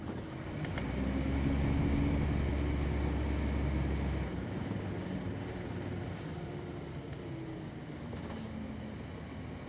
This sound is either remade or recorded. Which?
recorded